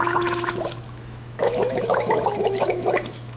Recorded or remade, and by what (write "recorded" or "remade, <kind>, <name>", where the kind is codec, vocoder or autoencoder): remade, autoencoder, DAC-VAE